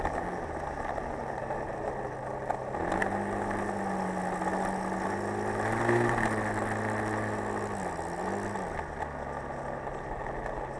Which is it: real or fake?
real